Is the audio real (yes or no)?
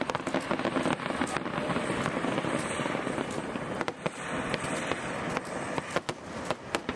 yes